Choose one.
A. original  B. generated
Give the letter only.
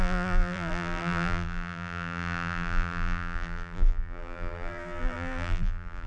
B